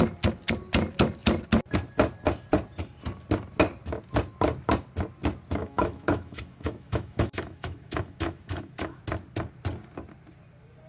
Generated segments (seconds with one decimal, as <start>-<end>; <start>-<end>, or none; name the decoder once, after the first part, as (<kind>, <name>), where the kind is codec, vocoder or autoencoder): 5.6-9.0 (autoencoder, DAC-VAE)